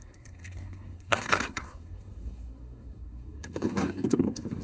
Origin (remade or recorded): remade